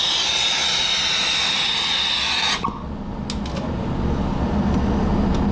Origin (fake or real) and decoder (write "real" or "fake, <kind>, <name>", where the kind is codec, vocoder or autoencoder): real